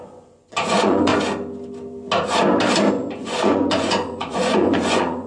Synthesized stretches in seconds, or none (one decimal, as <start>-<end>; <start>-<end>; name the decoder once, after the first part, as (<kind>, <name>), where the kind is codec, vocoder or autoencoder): 0.0-1.1 (vocoder, Vocos); 2.9-5.3